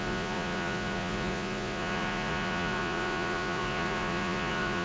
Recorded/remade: remade